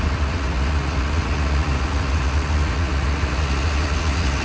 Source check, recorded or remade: remade